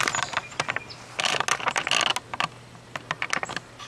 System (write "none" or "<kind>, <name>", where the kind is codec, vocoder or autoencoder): none